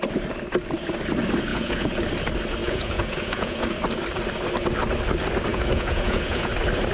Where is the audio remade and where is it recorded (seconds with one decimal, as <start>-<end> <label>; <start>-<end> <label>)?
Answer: 0.0-1.5 recorded; 1.5-2.0 remade; 2.0-2.6 recorded; 2.6-3.6 remade; 3.6-5.5 recorded; 5.5-6.5 remade; 6.5-6.9 recorded